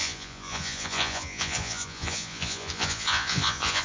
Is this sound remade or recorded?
remade